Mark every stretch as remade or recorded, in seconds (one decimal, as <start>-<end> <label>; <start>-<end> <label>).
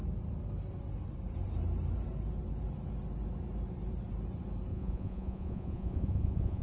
0.0-4.7 recorded; 4.7-6.6 remade